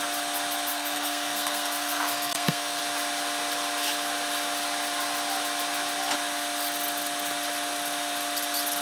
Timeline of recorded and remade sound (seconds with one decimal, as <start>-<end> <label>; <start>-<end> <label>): 0.0-0.7 recorded; 0.7-2.8 remade; 2.8-8.8 recorded

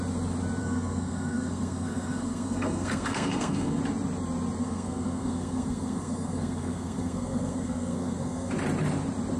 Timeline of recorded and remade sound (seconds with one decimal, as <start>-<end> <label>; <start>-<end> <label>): 0.0-0.6 recorded; 0.6-3.8 remade; 3.8-4.6 recorded; 4.6-8.5 remade; 8.5-9.4 recorded

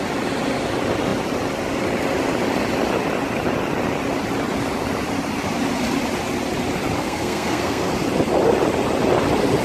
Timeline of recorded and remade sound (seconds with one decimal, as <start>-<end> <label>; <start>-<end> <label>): 0.0-7.0 recorded; 7.0-7.9 remade; 7.9-9.6 recorded

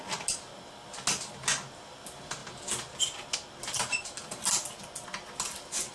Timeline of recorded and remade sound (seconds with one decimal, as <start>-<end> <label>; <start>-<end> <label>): 0.0-5.9 recorded

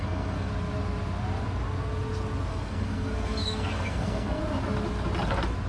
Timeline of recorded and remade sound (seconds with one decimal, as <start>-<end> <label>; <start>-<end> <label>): 0.0-0.5 remade; 0.5-2.5 recorded; 2.5-4.4 remade; 4.4-5.7 recorded